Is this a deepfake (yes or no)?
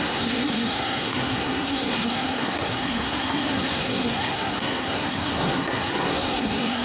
yes